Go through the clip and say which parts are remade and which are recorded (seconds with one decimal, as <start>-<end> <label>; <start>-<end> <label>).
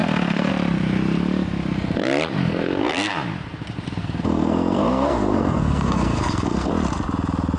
0.0-0.5 remade; 0.5-2.4 recorded; 2.4-3.1 remade; 3.1-4.0 recorded; 4.0-6.7 remade; 6.7-7.6 recorded